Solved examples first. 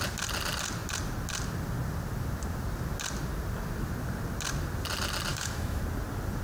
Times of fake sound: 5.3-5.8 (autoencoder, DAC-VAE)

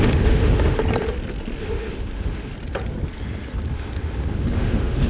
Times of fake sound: 0.0-0.8 (autoencoder, DAC-VAE); 1.6-2.5; 3.7-5.1

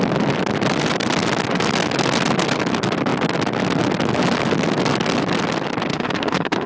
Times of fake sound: 5.9-6.7 (autoencoder, DAC-VAE)

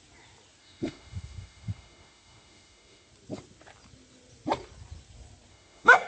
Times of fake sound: 0.6-3.1 (autoencoder, DAC-VAE); 5.5-6.1

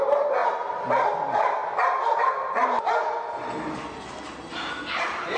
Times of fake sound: none